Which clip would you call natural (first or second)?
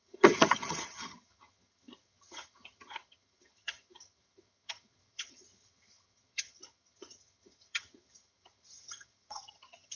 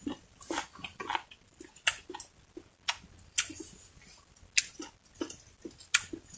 second